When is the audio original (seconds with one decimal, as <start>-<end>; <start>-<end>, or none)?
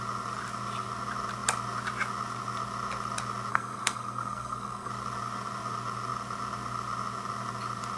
0.0-3.5; 4.9-8.0